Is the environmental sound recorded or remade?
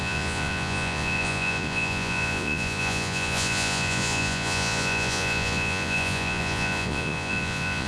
remade